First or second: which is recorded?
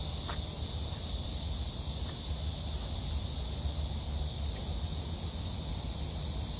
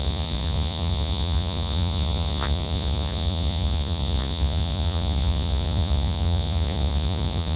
first